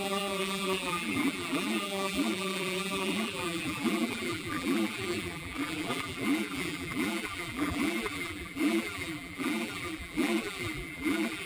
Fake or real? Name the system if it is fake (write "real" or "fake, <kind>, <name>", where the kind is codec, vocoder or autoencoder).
fake, vocoder, BigVGAN v2